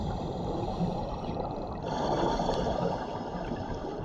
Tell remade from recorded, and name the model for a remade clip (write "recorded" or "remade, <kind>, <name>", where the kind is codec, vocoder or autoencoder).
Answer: remade, vocoder, BigVGAN v2